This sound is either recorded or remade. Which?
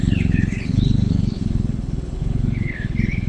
remade